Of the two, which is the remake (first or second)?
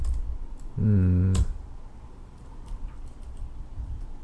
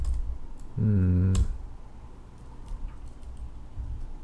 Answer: first